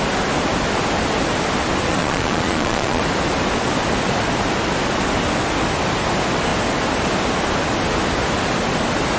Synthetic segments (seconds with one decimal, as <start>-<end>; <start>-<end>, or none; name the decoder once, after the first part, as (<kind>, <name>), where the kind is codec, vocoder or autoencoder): 1.9-3.0 (vocoder, Vocos)

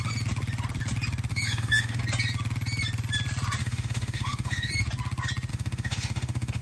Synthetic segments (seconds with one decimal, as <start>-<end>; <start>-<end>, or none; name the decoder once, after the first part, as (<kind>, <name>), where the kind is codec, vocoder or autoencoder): 1.3-2.0 (autoencoder, DAC-VAE); 3.6-4.7; 5.5-6.6

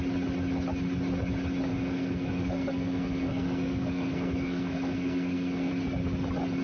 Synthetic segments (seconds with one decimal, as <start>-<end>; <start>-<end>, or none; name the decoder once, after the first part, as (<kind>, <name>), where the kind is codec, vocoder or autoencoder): 1.7-5.7 (codec, SNAC)

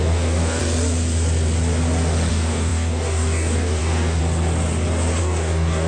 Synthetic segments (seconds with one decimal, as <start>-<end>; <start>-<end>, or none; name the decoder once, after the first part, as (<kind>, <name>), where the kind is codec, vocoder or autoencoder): 0.0-0.6 (codec, DAC); 2.3-4.2; 5.2-5.9

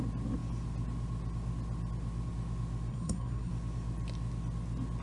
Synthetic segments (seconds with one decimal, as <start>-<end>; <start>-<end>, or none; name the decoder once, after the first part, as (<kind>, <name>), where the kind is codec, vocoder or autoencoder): 2.9-3.5 (codec, SNAC)

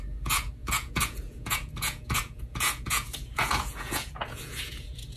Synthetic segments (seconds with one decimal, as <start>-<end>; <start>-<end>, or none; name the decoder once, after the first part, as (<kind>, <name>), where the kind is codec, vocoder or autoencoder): 0.0-5.2 (vocoder, Vocos)

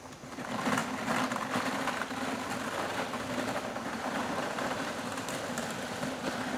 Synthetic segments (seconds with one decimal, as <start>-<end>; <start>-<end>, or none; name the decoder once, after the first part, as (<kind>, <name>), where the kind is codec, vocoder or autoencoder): 0.8-2.3 (vocoder, BigVGAN v2); 2.9-5.3